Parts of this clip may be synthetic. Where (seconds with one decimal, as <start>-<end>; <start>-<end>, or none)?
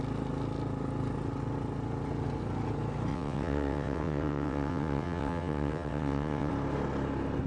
3.1-6.5